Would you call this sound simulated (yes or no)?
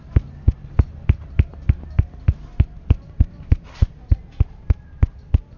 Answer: no